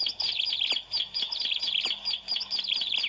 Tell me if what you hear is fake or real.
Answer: real